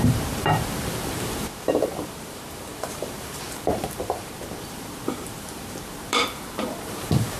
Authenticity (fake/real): fake